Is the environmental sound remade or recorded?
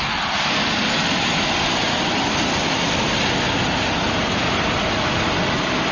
recorded